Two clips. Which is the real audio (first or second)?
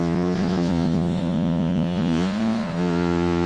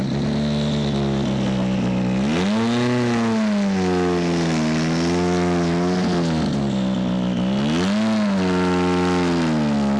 second